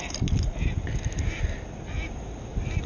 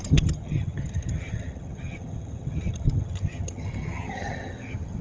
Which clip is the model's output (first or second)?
second